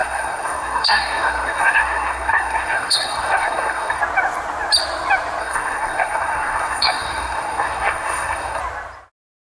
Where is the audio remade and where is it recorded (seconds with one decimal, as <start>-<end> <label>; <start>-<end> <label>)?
0.0-4.0 remade; 4.0-5.4 recorded; 5.4-8.6 remade; 8.6-9.5 recorded